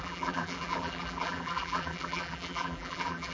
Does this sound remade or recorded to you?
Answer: remade